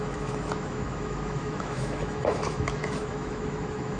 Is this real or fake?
fake